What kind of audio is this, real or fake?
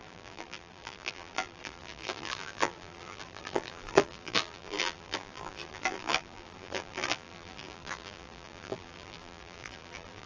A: fake